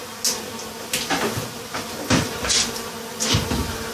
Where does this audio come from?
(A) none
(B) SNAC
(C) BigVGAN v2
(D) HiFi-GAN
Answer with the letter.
A